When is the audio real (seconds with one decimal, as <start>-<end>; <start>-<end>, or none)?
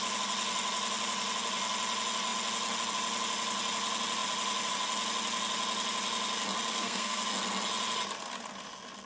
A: 0.0-6.7; 7.2-9.1